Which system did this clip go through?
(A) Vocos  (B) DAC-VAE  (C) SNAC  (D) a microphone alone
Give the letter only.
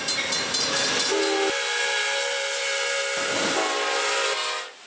D